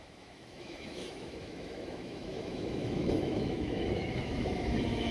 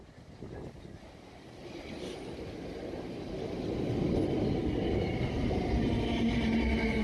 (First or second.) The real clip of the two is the second